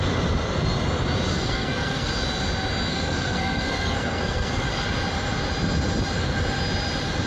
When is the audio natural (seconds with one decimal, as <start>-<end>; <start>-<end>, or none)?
0.0-1.3; 2.1-2.9; 4.8-7.3

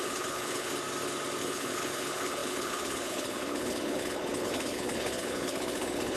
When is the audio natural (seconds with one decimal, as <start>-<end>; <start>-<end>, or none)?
0.7-1.4

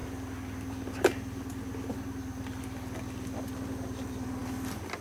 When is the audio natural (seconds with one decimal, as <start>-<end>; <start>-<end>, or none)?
0.0-5.0